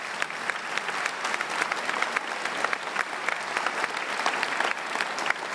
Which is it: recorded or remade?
recorded